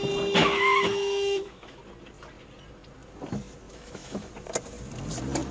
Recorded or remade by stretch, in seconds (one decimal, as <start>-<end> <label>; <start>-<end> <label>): 0.0-0.4 recorded; 0.4-1.8 remade; 1.8-3.7 recorded; 3.7-4.3 remade; 4.3-5.5 recorded

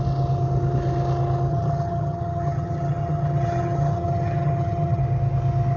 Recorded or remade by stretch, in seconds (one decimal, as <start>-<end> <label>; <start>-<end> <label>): 0.0-1.5 recorded; 1.5-5.0 remade; 5.0-5.8 recorded

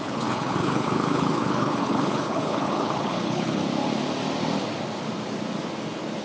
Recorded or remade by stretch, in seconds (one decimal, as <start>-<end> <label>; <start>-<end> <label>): 0.0-3.6 remade; 3.6-6.2 recorded

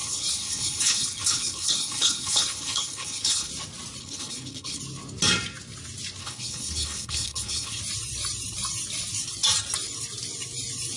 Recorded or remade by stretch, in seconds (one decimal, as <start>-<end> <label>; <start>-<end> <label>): 0.0-3.5 remade; 3.5-4.0 recorded; 4.0-4.8 remade; 4.8-6.2 recorded; 6.2-7.8 remade; 7.8-11.0 recorded